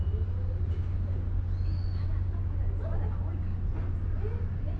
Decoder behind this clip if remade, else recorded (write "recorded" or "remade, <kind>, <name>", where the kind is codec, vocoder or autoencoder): recorded